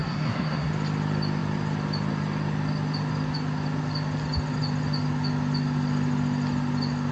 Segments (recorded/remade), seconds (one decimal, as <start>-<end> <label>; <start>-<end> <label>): 0.0-0.7 remade; 0.7-7.1 recorded